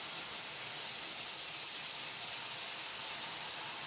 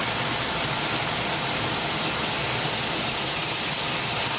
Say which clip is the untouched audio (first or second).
first